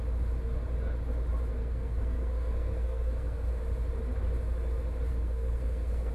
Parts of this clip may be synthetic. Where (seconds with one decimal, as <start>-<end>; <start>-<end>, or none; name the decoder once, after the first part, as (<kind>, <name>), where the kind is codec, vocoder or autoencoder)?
1.5-3.5 (codec, SNAC); 5.1-6.1